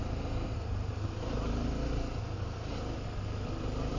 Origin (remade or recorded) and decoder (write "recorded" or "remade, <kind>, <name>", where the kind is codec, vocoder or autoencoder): recorded